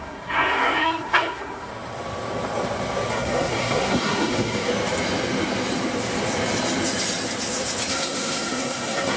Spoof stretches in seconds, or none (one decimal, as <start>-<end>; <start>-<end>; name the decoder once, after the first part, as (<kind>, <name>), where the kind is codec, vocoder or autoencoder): 0.0-1.7 (codec, SNAC); 3.1-4.7; 7.9-9.2